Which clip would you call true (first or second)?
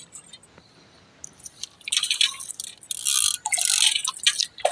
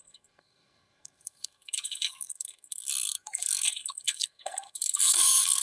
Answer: first